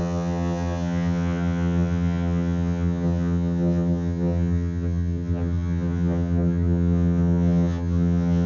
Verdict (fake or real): fake